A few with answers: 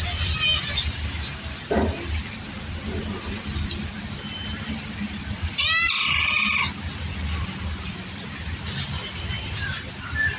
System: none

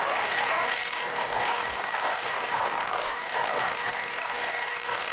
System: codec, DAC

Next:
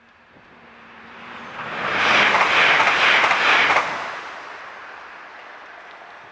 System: none